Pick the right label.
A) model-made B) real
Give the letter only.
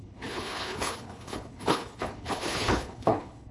A